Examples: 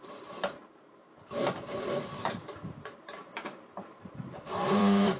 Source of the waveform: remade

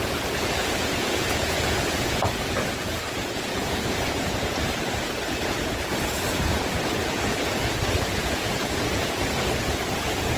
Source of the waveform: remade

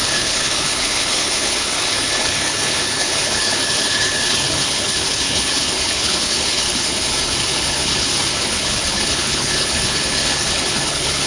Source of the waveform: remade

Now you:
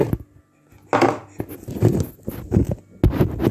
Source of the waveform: recorded